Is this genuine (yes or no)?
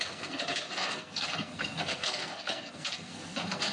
no